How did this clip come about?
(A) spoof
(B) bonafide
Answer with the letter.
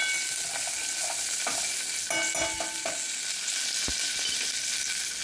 B